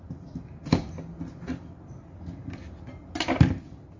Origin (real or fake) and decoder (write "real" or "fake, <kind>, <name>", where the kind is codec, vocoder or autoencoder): real